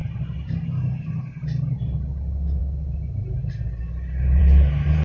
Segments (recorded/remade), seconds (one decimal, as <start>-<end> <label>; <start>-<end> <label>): 0.0-5.0 recorded

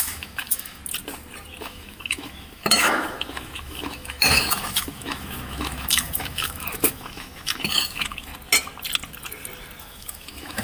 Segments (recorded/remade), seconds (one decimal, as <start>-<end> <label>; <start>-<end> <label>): 0.0-0.8 remade; 0.8-1.6 recorded; 1.6-8.3 remade; 8.3-9.8 recorded; 9.8-10.6 remade

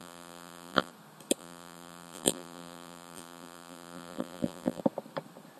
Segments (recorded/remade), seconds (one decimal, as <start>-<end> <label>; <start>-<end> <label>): 0.0-0.9 remade; 0.9-1.4 recorded; 1.4-4.8 remade; 4.8-5.6 recorded

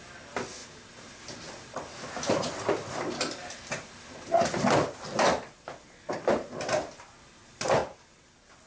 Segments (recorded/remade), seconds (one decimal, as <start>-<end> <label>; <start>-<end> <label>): 0.0-8.7 recorded